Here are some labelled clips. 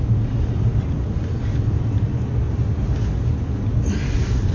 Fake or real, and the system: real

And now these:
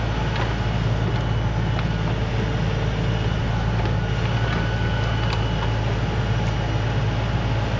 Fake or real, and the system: real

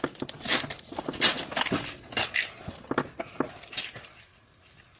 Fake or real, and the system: real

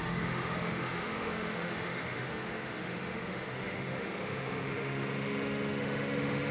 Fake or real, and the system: fake, autoencoder, DAC-VAE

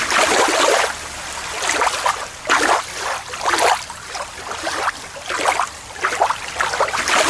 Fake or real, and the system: real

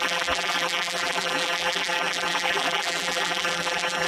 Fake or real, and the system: fake, vocoder, BigVGAN v2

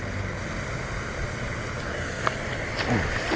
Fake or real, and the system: real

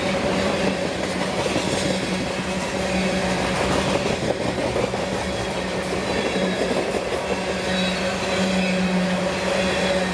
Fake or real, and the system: real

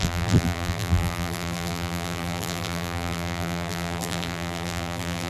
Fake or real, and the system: fake, vocoder, BigVGAN v2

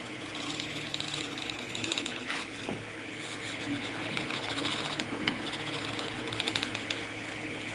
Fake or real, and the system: fake, codec, HILCodec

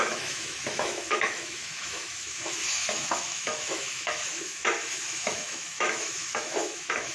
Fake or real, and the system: fake, autoencoder, DAC-VAE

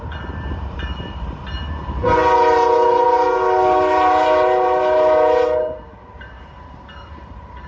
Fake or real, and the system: fake, vocoder, BigVGAN v2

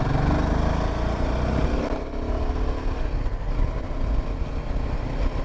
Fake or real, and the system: real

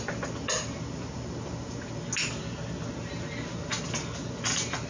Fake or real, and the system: real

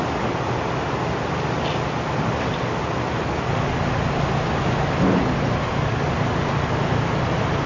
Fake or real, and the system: real